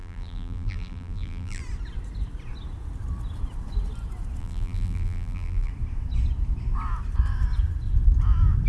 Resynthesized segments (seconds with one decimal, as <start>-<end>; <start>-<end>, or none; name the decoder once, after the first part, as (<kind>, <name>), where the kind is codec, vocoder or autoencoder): 0.0-1.6 (vocoder, BigVGAN v2); 4.4-5.7